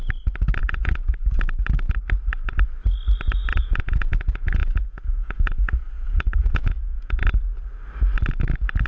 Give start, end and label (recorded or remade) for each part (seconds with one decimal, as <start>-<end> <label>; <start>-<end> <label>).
0.0-0.6 recorded; 0.6-1.3 remade; 1.3-3.5 recorded; 3.5-7.2 remade; 7.2-8.9 recorded